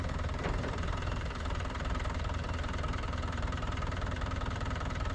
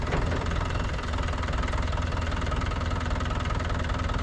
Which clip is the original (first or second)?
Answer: second